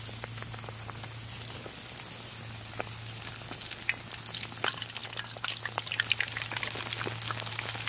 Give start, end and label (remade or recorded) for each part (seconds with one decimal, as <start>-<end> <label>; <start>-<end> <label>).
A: 0.0-7.9 recorded